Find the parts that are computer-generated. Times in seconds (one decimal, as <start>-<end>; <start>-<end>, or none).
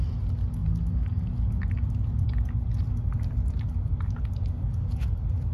none